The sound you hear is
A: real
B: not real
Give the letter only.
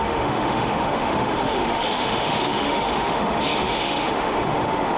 B